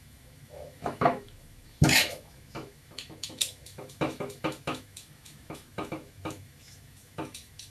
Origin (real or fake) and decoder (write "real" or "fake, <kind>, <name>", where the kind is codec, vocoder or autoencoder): fake, autoencoder, DAC-VAE